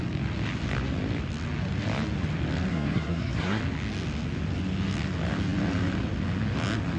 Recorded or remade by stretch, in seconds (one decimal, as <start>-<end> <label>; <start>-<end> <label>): 0.0-2.7 recorded; 2.7-3.6 remade; 3.6-7.0 recorded